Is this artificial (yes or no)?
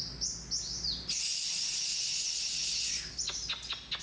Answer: no